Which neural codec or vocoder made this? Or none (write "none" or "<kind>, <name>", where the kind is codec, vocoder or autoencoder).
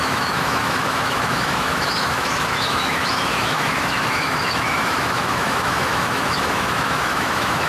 autoencoder, DAC-VAE